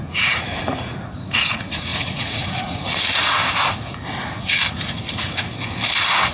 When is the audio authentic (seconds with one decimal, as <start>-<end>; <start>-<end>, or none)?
3.4-4.7; 5.5-6.3